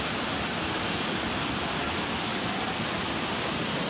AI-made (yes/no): yes